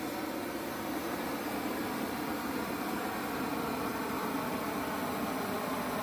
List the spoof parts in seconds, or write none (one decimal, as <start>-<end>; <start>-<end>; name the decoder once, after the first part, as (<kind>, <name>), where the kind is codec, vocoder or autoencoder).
none